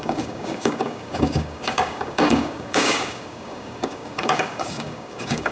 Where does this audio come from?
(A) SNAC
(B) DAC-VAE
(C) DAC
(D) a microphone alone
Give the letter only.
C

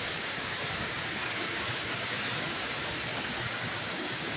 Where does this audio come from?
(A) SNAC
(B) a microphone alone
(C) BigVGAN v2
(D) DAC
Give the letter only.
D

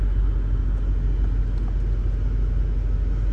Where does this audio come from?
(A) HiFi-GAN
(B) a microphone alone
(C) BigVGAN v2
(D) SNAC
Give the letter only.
B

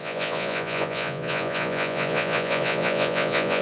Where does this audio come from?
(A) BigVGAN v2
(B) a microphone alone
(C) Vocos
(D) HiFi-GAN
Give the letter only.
C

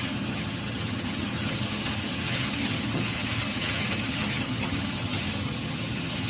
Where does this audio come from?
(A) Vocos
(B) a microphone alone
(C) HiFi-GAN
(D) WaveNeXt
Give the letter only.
C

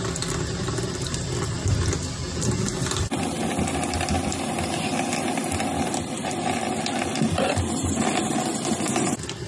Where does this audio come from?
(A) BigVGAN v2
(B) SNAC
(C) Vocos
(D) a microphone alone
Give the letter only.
D